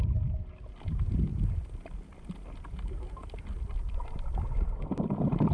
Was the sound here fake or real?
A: real